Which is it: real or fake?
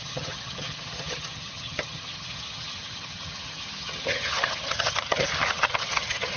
fake